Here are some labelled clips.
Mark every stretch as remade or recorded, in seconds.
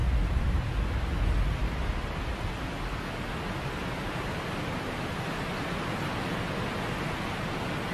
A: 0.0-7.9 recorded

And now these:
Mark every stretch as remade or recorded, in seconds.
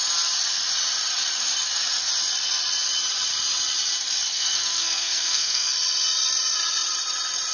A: 0.0-4.3 recorded; 4.3-5.7 remade; 5.7-7.5 recorded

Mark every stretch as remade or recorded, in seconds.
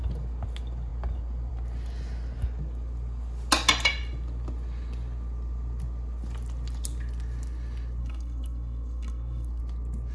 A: 0.0-8.0 recorded; 8.0-9.6 remade; 9.6-10.1 recorded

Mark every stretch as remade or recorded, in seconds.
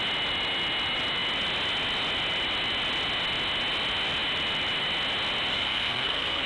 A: 0.0-5.5 recorded; 5.5-6.5 remade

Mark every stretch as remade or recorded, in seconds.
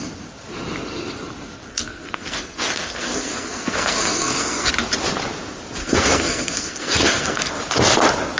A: 0.0-1.7 recorded; 1.7-4.7 remade; 4.7-5.8 recorded; 5.8-7.5 remade; 7.5-8.4 recorded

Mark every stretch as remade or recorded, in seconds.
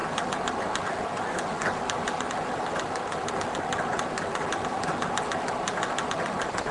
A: 0.0-6.7 recorded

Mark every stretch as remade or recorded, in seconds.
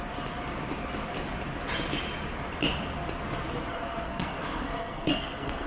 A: 0.0-3.7 recorded; 3.7-5.7 remade